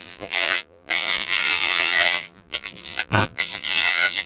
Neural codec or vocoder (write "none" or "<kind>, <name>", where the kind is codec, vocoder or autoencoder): vocoder, BigVGAN v2